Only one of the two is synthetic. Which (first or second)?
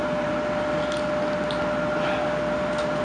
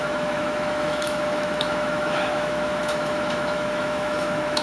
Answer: second